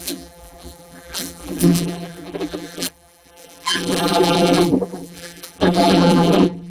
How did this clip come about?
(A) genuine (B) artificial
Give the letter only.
B